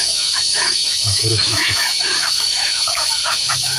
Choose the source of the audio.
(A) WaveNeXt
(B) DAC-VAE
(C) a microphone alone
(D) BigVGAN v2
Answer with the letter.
B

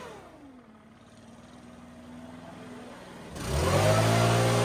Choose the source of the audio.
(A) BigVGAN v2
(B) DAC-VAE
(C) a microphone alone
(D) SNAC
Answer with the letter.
C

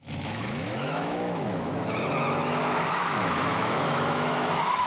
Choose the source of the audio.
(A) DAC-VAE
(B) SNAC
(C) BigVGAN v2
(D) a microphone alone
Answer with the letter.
A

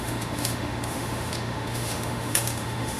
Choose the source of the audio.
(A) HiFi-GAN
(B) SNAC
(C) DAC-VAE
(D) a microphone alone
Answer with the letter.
C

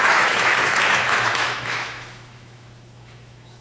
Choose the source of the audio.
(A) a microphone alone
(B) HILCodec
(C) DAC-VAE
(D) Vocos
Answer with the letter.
C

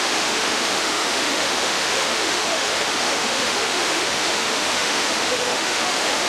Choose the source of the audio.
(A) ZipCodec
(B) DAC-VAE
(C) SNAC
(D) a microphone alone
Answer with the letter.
B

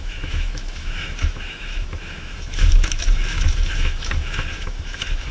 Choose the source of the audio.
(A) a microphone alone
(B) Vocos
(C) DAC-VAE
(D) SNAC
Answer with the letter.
C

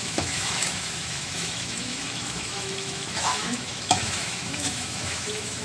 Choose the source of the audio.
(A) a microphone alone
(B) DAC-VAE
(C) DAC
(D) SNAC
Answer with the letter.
B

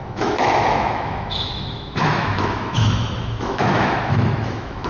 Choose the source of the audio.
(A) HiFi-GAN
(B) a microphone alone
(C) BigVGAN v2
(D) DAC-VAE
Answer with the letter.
D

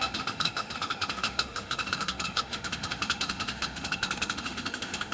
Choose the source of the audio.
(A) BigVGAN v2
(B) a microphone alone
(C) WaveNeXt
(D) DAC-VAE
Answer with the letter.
D